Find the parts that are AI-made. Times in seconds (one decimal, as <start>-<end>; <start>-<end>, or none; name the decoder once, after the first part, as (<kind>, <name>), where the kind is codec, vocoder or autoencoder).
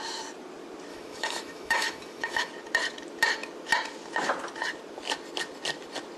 0.9-2.5 (autoencoder, DAC-VAE)